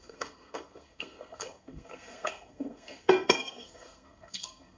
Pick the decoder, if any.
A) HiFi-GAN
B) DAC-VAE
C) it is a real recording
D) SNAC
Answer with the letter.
D